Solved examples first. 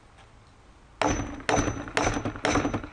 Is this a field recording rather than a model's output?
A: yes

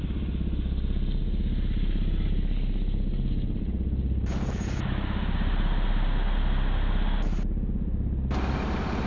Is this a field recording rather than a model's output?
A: yes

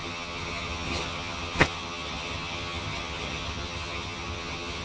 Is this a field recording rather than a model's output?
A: no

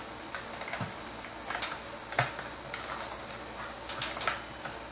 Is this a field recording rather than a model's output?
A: yes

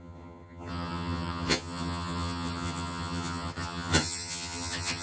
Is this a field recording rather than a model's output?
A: no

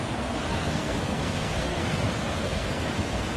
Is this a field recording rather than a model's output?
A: no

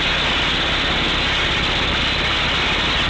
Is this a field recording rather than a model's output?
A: yes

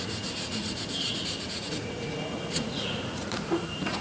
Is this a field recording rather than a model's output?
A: no